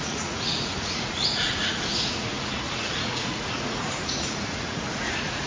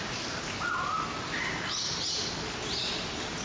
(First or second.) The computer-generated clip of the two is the first